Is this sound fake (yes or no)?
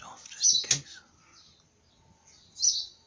no